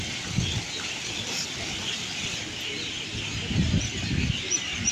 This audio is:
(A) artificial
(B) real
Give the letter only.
B